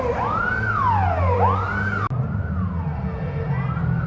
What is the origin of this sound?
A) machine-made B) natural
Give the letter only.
B